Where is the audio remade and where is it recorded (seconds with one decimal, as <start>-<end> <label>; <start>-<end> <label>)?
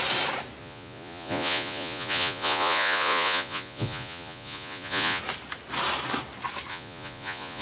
0.0-0.6 recorded; 0.6-5.2 remade; 5.2-6.7 recorded; 6.7-7.6 remade